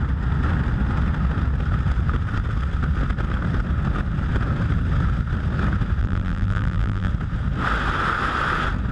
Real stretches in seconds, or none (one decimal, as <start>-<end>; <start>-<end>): 0.0-6.0; 7.1-8.9